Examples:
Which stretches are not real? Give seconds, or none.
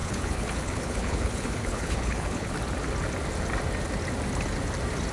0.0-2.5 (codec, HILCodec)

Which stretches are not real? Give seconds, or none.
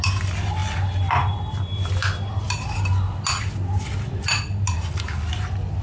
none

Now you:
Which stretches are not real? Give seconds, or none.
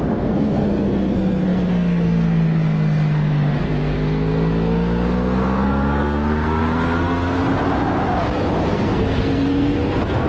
0.0-7.4 (codec, SNAC); 8.7-10.3